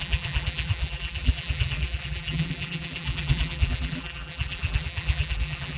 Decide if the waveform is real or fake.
fake